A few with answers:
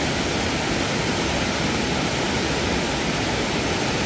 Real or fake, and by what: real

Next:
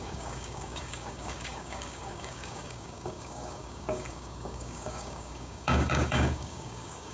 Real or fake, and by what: fake, codec, DAC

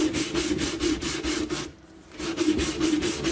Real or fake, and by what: real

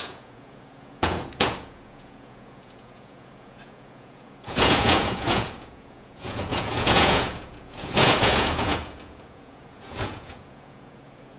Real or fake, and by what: fake, vocoder, Vocos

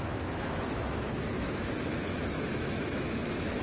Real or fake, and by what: fake, autoencoder, DAC-VAE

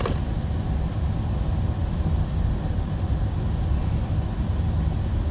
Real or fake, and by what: real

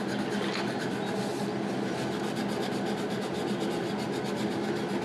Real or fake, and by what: real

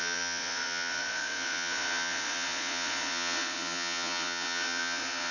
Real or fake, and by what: fake, vocoder, Vocos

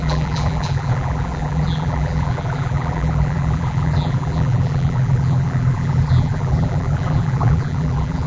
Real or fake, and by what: fake, vocoder, BigVGAN v2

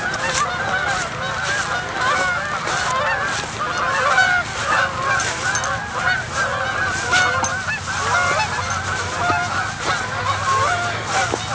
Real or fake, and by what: real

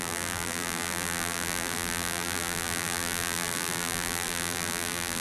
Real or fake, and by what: fake, vocoder, BigVGAN v2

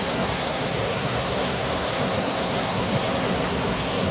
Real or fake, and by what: fake, codec, SNAC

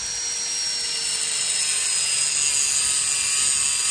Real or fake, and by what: real